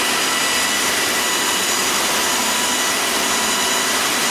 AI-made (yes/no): no